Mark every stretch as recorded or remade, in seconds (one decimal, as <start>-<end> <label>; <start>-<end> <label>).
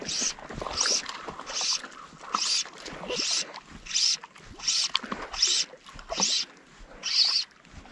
0.0-7.9 recorded